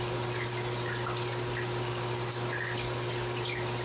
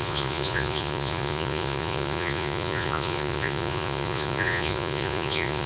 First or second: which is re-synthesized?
second